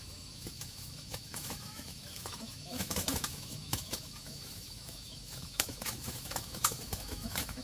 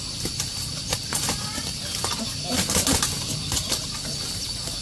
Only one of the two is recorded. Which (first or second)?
second